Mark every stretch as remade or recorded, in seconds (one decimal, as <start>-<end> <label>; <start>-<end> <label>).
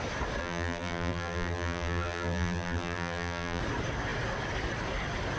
0.0-0.4 recorded; 0.4-3.6 remade; 3.6-5.4 recorded